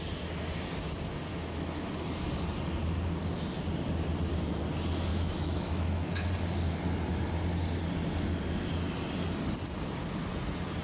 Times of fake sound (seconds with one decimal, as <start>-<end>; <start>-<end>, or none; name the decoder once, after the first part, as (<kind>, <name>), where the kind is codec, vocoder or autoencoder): 1.3-1.9 (autoencoder, DAC-VAE); 5.1-6.3